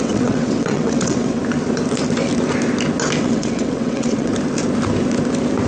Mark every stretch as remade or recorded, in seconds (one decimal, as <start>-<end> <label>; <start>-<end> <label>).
0.0-1.4 remade; 1.4-3.2 recorded; 3.2-4.3 remade; 4.3-5.7 recorded